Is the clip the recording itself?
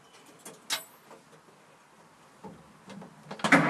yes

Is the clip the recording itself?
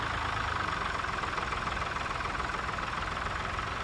yes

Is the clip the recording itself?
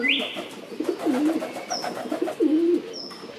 yes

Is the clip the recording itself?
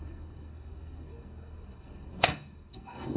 no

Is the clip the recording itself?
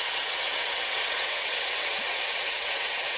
no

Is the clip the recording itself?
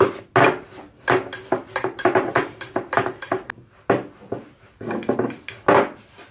yes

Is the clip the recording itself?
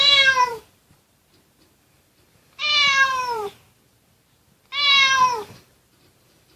no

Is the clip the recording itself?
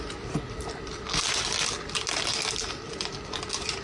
yes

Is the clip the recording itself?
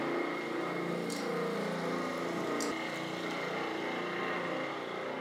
yes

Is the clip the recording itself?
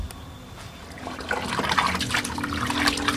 yes